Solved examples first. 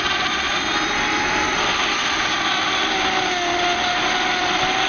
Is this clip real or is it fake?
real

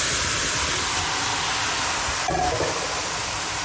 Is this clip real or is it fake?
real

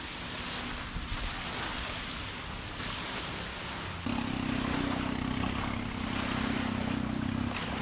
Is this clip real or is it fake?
real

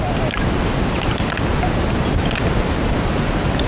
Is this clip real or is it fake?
real